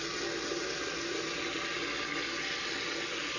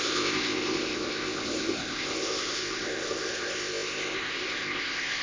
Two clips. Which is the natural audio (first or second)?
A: first